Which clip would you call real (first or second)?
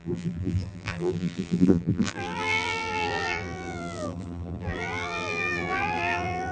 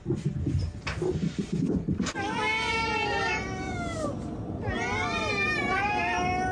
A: second